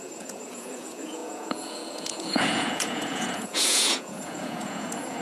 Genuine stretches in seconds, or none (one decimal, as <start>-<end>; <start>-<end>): none